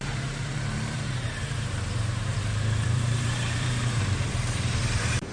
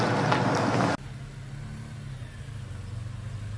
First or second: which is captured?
second